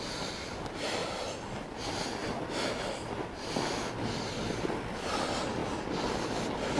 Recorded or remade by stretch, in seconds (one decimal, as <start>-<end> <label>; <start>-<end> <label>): 0.0-6.8 recorded